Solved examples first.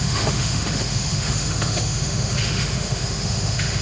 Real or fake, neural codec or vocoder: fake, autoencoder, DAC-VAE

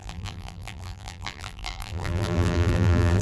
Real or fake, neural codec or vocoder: fake, vocoder, BigVGAN v2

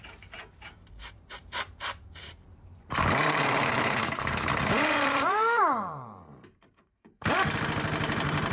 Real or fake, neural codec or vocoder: fake, vocoder, BigVGAN v2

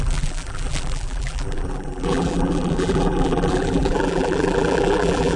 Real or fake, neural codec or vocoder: fake, vocoder, BigVGAN v2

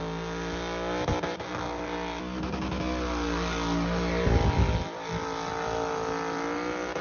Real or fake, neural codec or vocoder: real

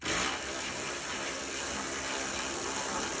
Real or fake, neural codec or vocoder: real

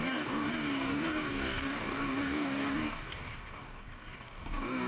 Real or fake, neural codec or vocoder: fake, codec, DAC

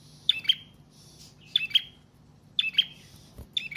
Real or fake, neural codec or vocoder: real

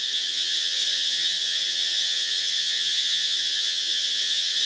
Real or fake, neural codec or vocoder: fake, vocoder, HiFi-GAN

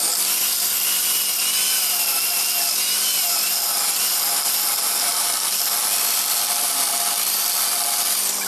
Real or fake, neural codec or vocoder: real